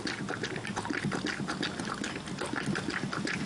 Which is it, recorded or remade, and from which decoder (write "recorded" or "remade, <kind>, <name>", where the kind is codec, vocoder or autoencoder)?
recorded